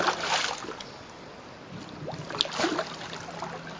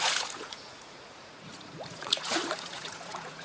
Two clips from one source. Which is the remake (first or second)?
second